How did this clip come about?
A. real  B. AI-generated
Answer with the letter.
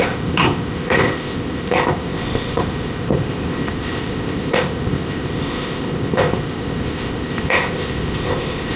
B